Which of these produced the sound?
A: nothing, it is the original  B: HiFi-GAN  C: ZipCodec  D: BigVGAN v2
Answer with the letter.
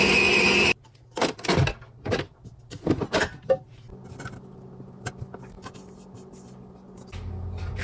A